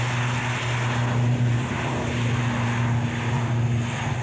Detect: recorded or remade recorded